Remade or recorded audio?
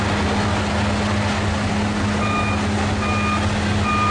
recorded